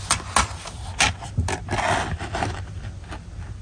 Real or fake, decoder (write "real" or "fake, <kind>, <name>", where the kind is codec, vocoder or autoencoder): real